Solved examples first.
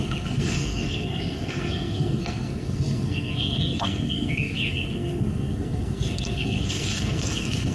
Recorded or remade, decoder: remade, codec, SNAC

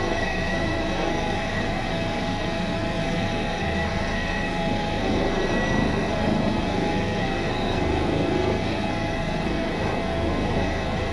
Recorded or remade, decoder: remade, codec, SNAC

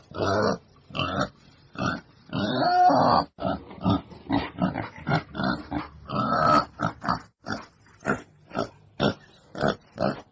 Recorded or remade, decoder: recorded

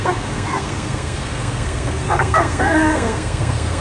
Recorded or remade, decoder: remade, codec, SNAC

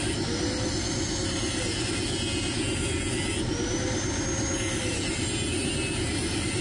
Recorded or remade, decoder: recorded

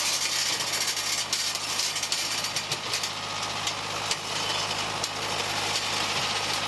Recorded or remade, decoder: recorded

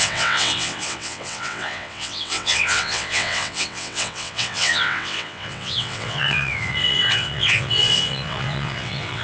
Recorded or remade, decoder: remade, vocoder, WaveNeXt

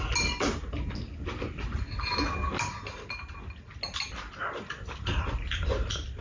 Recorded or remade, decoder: recorded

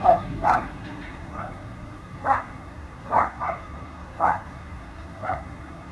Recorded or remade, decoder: remade, codec, SNAC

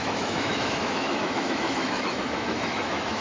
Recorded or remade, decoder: remade, autoencoder, DAC-VAE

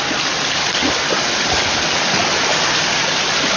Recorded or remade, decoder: recorded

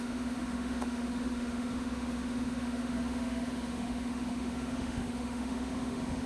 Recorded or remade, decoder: remade, autoencoder, DAC-VAE